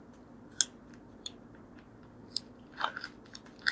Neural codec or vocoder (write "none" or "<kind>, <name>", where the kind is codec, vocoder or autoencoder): none